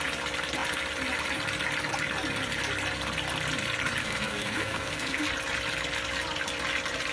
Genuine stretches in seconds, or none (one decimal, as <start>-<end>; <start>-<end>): 0.0-4.0; 5.2-7.1